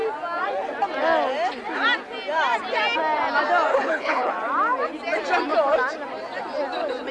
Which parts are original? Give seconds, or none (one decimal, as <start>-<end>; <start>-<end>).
0.0-3.7; 4.3-7.1